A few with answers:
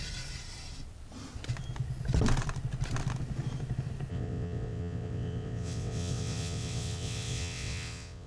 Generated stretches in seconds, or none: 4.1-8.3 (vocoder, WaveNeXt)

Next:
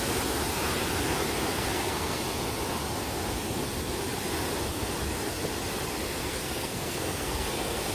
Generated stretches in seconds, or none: 1.5-2.2 (codec, SNAC); 6.2-7.9

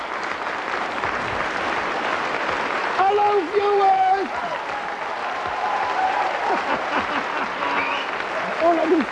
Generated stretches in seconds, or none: 2.8-4.4 (vocoder, BigVGAN v2); 5.2-7.1